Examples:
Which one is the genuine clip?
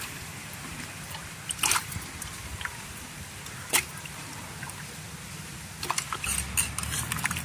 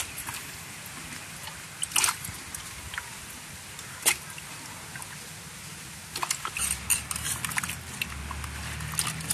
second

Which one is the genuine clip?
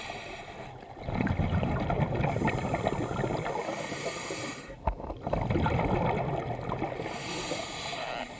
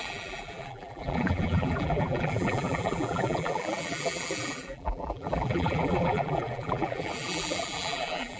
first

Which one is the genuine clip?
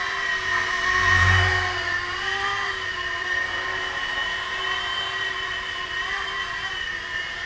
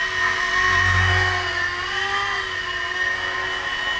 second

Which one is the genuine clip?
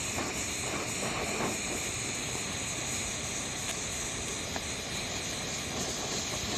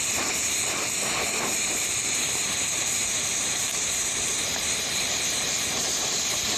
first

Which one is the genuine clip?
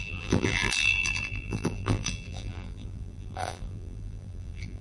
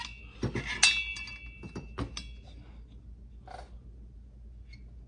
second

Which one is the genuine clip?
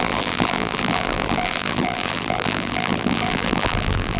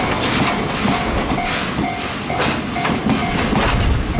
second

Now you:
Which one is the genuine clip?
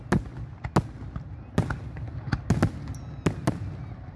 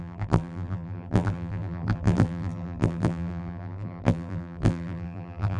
first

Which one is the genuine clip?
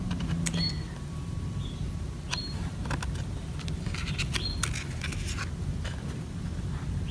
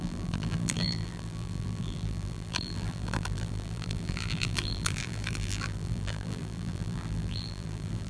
first